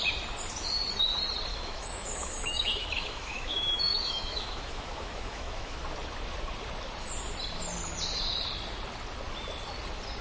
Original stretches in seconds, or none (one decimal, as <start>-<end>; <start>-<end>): 0.0-1.5; 5.8-10.2